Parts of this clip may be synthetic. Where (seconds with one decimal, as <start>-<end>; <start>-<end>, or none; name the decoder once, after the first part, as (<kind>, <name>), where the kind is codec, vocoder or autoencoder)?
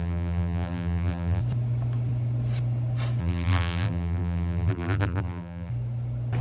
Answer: 0.0-1.4 (vocoder, BigVGAN v2); 3.2-5.7